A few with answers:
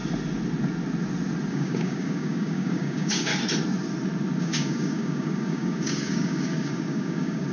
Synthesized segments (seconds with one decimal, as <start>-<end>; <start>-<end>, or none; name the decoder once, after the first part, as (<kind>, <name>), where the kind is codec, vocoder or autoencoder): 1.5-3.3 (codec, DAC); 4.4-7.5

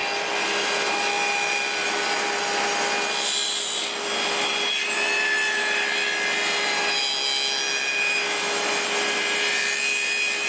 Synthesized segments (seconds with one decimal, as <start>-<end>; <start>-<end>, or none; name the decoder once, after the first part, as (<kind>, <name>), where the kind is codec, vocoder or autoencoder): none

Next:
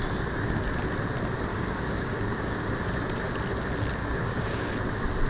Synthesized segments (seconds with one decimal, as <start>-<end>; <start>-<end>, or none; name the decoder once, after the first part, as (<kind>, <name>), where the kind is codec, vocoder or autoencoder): 1.5-2.6 (codec, DAC); 4.0-4.7

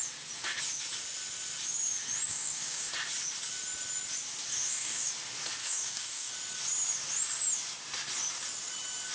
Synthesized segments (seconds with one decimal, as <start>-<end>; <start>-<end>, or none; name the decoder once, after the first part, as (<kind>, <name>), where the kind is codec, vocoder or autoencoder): 2.3-2.9 (codec, DAC); 4.5-5.1; 5.6-6.3

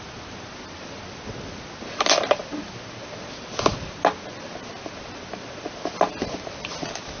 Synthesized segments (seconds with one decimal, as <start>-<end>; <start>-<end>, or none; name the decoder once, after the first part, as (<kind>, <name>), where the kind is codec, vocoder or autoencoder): none

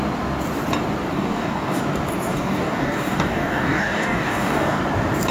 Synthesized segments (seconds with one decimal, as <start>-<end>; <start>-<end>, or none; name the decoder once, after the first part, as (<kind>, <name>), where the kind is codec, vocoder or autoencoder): 1.1-1.8 (codec, DAC); 2.3-4.8

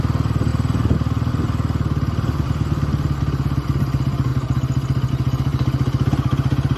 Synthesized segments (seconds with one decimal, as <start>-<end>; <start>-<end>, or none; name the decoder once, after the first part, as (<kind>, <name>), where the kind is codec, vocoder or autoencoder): none